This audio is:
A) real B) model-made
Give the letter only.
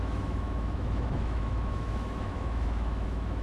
B